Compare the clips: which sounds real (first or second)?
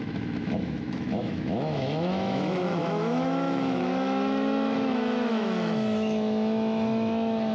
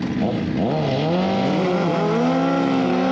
second